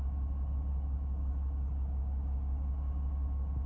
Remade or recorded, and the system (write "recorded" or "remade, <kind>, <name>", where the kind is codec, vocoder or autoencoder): recorded